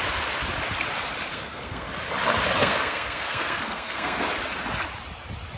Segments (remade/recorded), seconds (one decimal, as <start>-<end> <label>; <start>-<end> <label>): 0.0-1.3 recorded; 1.3-1.9 remade; 1.9-2.6 recorded; 2.6-4.3 remade; 4.3-5.6 recorded